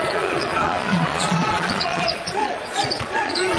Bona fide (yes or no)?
no